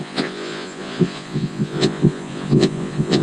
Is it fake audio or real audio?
fake